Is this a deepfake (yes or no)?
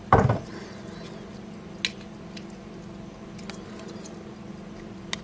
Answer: no